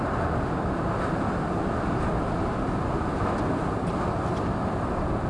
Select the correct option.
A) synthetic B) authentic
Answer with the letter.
B